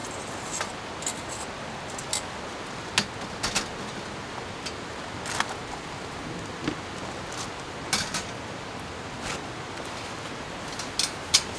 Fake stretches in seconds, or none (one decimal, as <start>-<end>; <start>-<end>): none